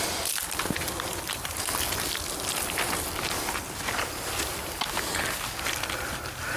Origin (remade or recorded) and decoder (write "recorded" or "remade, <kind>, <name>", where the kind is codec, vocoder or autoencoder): recorded